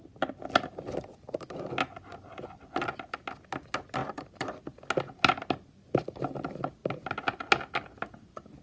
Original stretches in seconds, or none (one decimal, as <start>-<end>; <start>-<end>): 0.0-2.1; 3.2-4.0; 4.6-8.6